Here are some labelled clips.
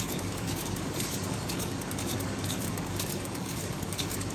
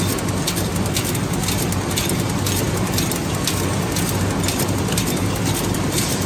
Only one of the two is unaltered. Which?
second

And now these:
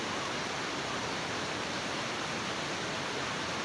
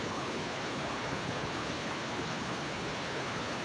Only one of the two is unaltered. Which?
first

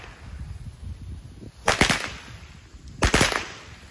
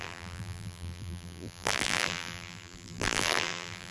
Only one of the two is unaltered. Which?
first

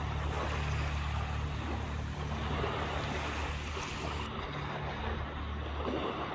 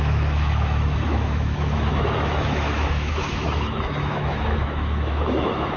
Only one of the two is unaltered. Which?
first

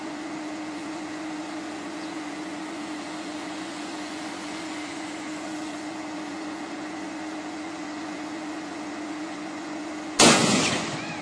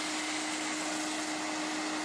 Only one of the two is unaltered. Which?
second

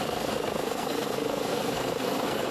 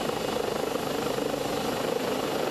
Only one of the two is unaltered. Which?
second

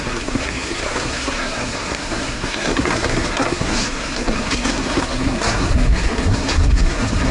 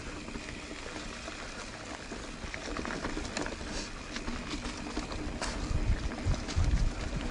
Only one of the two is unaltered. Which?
second